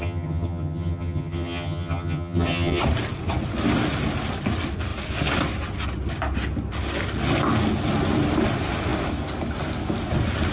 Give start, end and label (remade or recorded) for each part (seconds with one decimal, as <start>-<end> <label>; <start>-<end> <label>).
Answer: 0.0-2.8 remade; 2.8-10.5 recorded